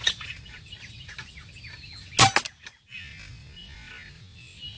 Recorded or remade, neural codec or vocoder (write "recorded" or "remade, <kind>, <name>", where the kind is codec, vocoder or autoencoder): recorded